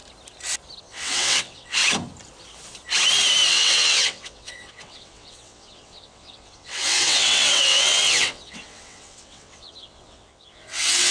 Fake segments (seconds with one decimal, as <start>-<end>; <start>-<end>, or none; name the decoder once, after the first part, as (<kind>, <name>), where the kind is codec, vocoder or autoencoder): 0.8-1.8 (vocoder, WaveNeXt); 3.5-11.1